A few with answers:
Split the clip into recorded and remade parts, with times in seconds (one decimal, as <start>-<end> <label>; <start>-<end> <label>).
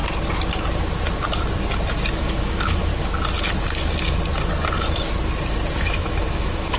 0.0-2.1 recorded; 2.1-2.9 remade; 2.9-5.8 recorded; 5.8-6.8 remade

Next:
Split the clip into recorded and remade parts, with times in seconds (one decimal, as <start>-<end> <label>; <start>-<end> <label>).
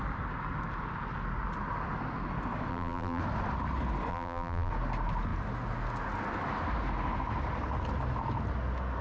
0.0-2.7 recorded; 2.7-3.2 remade; 3.2-4.1 recorded; 4.1-4.7 remade; 4.7-9.0 recorded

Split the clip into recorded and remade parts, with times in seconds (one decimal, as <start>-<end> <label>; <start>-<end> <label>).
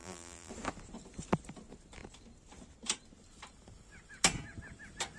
0.0-0.5 remade; 0.5-5.2 recorded